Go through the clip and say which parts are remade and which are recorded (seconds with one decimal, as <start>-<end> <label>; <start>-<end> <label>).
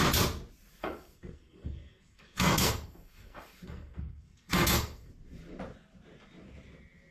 0.0-0.8 recorded; 0.8-5.1 remade; 5.1-7.1 recorded